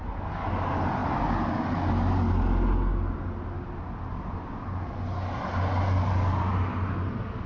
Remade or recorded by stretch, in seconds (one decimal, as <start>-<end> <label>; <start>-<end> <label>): 0.0-7.5 recorded

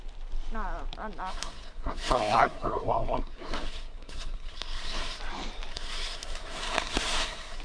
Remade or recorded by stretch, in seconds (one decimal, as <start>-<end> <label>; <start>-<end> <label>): 0.0-1.3 recorded; 1.3-5.2 remade; 5.2-5.7 recorded; 5.7-7.6 remade